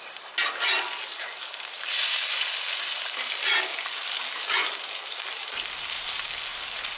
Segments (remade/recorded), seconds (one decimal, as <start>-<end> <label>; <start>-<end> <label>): 0.0-7.0 recorded